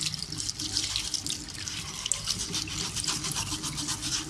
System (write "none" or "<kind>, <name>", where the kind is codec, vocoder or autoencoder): none